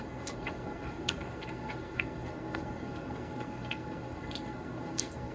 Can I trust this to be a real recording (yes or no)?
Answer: no